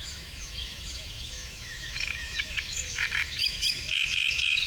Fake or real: fake